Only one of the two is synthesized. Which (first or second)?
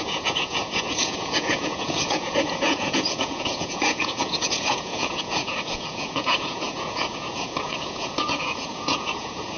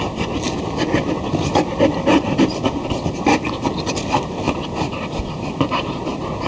first